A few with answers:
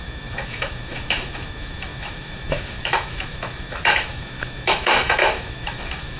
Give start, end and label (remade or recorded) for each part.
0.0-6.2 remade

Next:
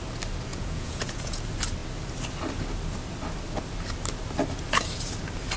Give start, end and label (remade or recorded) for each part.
0.0-0.5 recorded; 0.5-1.4 remade; 1.4-5.6 recorded

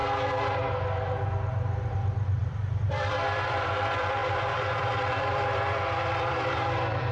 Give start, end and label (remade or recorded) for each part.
0.0-1.9 recorded; 1.9-7.1 remade

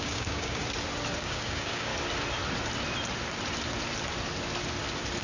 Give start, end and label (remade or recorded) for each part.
0.0-0.6 remade; 0.6-1.2 recorded; 1.2-1.9 remade; 1.9-5.2 recorded

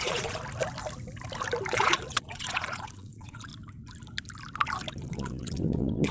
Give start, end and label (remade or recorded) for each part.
0.0-0.4 remade; 0.4-1.7 recorded; 1.7-3.5 remade; 3.5-4.9 recorded; 4.9-6.1 remade

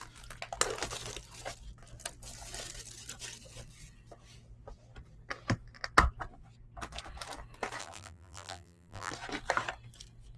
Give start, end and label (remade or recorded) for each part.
0.0-7.8 recorded; 7.8-9.1 remade; 9.1-10.4 recorded

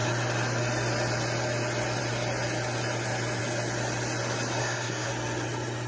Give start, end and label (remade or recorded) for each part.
0.0-4.6 recorded; 4.6-5.1 remade; 5.1-5.9 recorded